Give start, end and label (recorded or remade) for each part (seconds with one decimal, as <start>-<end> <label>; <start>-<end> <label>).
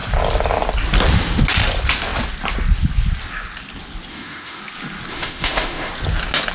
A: 0.0-4.1 recorded; 4.1-4.6 remade; 4.6-5.1 recorded; 5.1-5.9 remade; 5.9-6.5 recorded